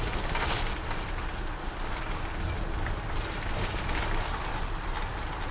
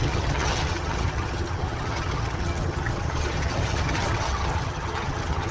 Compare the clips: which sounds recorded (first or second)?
first